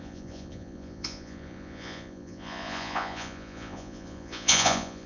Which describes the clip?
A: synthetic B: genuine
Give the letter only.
A